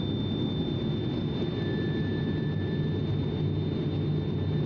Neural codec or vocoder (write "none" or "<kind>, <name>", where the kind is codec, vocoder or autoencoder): none